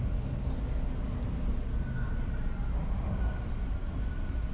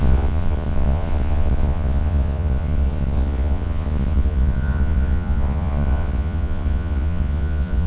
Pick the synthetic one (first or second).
second